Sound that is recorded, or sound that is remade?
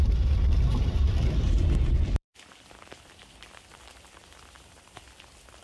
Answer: remade